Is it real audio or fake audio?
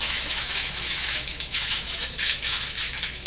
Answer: fake